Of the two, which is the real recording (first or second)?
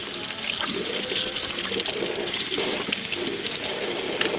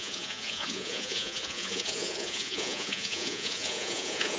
first